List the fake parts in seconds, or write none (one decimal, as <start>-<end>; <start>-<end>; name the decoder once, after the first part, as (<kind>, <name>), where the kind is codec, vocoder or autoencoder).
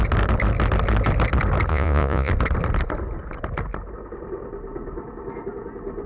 1.7-2.3 (vocoder, Vocos)